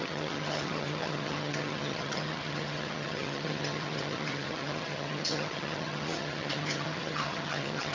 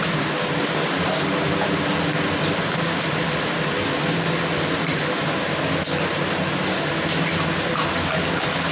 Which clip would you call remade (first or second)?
first